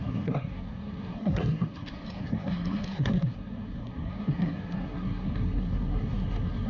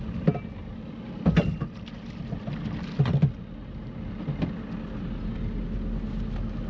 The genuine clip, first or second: second